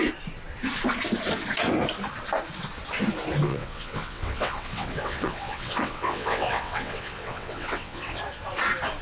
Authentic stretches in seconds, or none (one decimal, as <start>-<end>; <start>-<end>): 0.0-3.5; 8.2-9.0